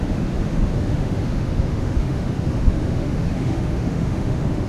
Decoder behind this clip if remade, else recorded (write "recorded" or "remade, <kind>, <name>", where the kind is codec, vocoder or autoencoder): remade, autoencoder, DAC-VAE